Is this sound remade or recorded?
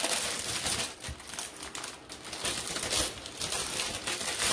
recorded